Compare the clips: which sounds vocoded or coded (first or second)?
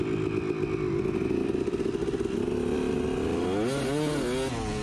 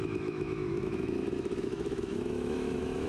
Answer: second